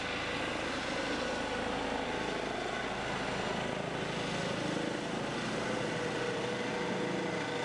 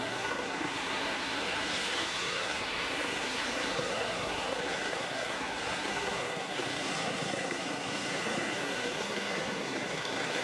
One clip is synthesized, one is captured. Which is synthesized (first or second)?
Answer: second